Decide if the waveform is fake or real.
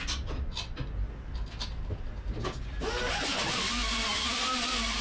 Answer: real